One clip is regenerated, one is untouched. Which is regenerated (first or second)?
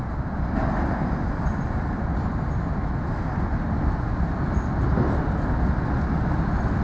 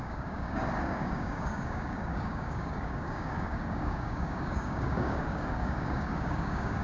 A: second